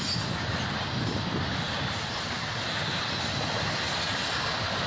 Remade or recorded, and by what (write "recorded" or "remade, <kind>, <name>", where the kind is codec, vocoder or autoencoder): recorded